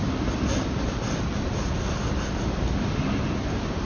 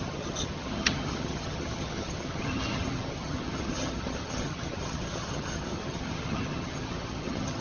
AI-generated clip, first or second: second